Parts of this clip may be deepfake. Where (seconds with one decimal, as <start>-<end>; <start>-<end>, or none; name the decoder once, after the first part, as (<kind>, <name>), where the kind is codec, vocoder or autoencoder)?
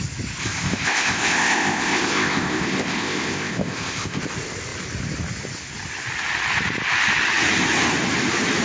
0.4-4.2 (codec, ZipCodec)